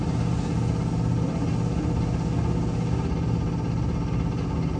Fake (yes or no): no